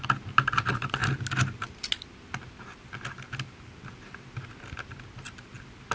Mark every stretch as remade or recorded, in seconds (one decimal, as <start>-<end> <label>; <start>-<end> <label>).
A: 0.0-5.9 recorded